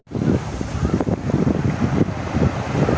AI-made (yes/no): no